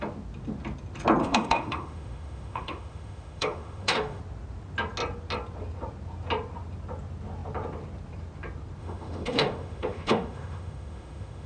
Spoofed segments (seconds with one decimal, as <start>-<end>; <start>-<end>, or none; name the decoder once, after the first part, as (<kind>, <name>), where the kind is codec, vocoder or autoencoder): 1.2-4.2 (autoencoder, DAC-VAE); 8.8-11.5